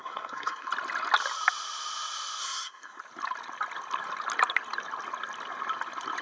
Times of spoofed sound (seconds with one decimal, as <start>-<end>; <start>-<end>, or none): 0.0-0.7; 2.4-3.0